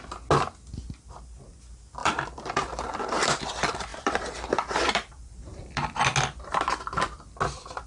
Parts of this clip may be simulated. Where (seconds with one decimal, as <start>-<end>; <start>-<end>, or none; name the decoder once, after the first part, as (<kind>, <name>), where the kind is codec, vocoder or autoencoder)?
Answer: 2.0-2.9 (vocoder, BigVGAN v2); 3.9-6.0